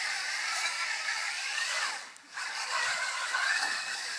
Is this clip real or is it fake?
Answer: fake